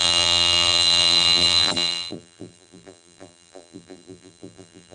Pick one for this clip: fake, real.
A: fake